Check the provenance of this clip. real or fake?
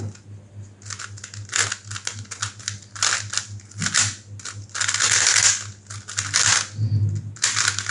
real